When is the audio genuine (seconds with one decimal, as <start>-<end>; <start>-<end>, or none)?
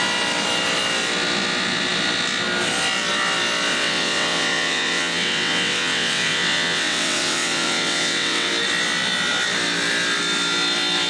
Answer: 0.0-3.7; 8.5-11.1